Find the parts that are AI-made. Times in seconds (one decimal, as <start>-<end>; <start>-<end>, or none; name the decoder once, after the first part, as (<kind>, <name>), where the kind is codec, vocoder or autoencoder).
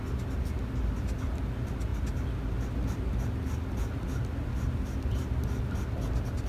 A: none